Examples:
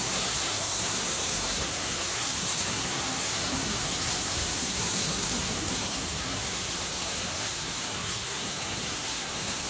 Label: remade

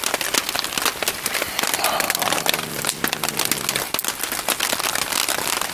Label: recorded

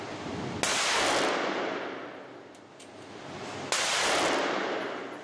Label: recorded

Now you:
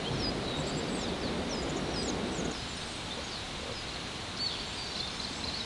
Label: recorded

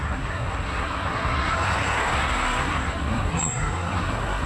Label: remade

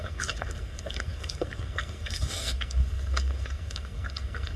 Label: remade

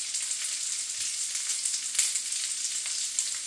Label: recorded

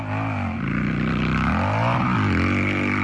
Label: recorded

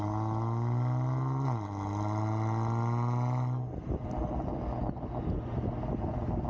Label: recorded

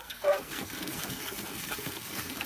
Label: remade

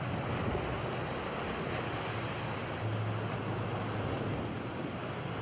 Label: recorded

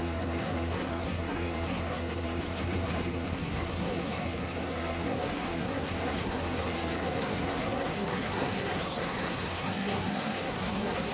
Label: remade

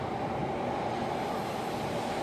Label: recorded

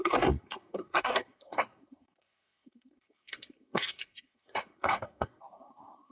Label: remade